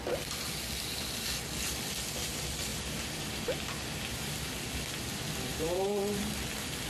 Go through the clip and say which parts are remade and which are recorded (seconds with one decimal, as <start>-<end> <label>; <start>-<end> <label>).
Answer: 0.0-2.7 recorded; 2.7-3.4 remade; 3.4-5.5 recorded; 5.5-6.4 remade; 6.4-6.9 recorded